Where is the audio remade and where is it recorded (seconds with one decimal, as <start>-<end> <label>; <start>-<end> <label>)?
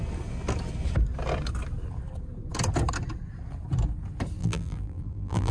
0.0-4.4 recorded; 4.4-5.5 remade